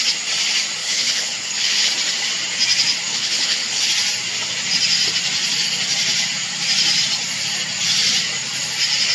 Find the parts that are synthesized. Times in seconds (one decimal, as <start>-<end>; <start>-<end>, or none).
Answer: 0.8-1.9; 3.1-3.9